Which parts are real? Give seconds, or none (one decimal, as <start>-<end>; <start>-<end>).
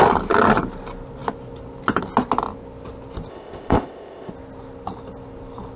0.0-3.3; 4.3-5.8